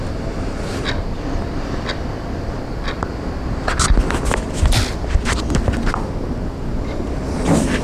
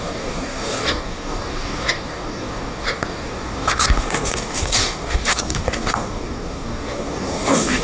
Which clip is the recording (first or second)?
first